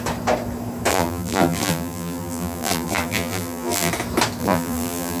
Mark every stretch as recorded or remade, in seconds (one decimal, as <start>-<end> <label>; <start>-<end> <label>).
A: 0.0-0.9 recorded; 0.9-3.9 remade; 3.9-4.4 recorded; 4.4-5.2 remade